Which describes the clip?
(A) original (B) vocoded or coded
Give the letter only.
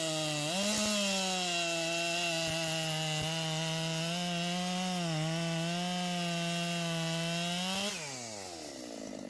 A